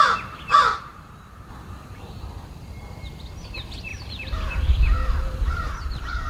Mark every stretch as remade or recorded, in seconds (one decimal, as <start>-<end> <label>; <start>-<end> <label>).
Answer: 0.0-0.7 recorded; 0.7-1.5 remade; 1.5-3.9 recorded; 3.9-6.3 remade